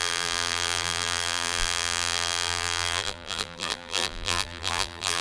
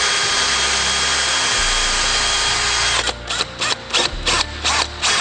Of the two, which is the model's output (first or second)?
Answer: first